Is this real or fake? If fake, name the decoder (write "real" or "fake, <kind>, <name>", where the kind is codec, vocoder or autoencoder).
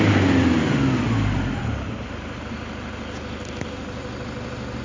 real